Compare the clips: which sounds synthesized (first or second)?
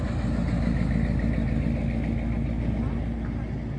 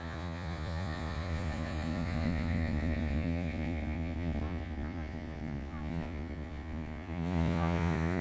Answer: second